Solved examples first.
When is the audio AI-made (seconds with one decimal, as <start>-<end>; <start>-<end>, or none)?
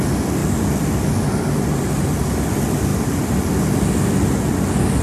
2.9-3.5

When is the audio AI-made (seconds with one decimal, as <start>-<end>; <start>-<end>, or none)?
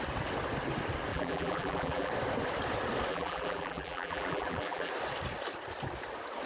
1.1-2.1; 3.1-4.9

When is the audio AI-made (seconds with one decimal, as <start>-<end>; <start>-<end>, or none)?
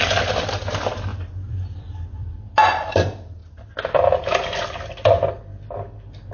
1.1-2.3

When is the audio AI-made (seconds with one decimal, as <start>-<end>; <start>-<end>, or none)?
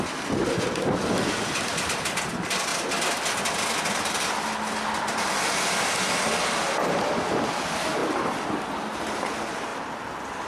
none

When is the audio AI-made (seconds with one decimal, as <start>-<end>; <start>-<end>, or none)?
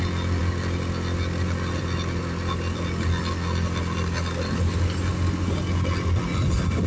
none